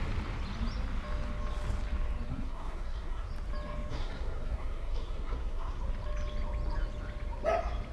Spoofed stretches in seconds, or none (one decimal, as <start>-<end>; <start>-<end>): 2.3-3.3; 3.9-5.8